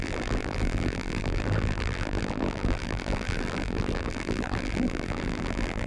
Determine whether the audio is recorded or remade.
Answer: remade